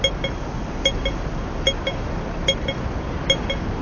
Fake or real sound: real